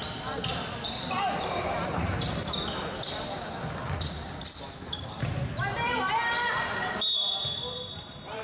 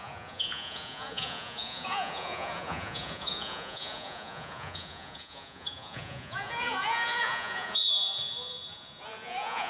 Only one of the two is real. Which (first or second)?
first